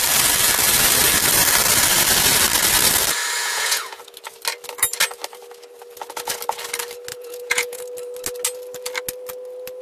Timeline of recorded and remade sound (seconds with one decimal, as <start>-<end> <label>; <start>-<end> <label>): 0.0-3.4 recorded; 3.4-4.0 remade; 4.0-7.1 recorded; 7.1-7.8 remade; 7.8-9.8 recorded